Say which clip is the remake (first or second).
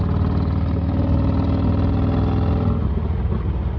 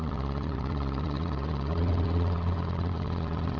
second